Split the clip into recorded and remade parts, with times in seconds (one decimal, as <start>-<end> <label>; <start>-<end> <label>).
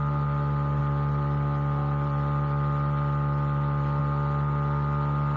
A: 0.0-0.8 recorded; 0.8-4.0 remade; 4.0-5.4 recorded